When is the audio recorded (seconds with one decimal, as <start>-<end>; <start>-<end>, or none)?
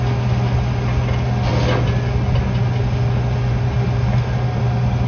0.0-5.1